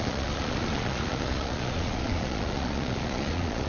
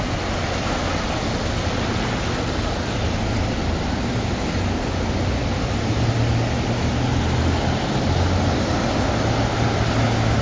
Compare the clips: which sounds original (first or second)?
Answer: second